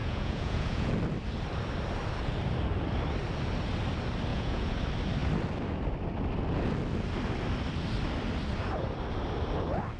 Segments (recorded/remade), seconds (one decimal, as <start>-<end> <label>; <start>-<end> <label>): 0.0-0.9 remade; 0.9-4.3 recorded; 4.3-4.8 remade; 4.8-10.0 recorded